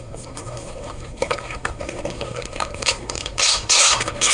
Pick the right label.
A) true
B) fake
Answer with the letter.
B